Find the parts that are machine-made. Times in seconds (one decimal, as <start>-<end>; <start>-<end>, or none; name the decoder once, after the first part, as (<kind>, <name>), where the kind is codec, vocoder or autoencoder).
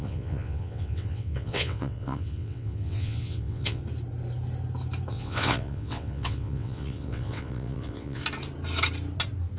0.0-3.8 (vocoder, WaveNeXt); 5.1-8.2